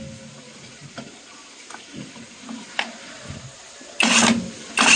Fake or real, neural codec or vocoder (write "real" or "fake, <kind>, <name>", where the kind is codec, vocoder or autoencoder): real